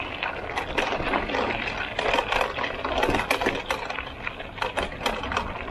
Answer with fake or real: real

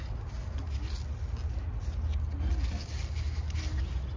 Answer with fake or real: real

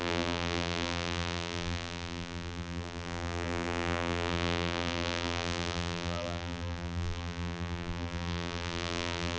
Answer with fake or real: fake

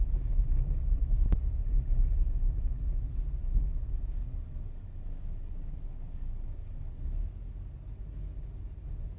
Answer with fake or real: real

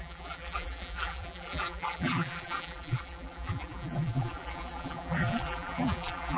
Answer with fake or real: fake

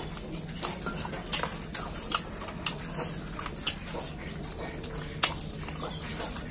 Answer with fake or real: real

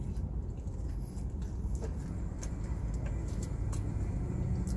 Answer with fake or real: real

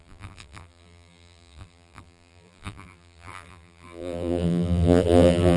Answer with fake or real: fake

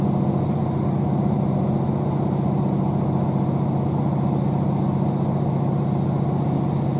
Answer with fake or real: real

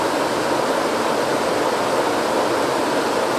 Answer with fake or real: real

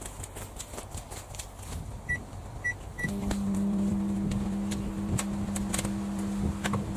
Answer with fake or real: real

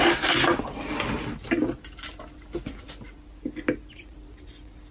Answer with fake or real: real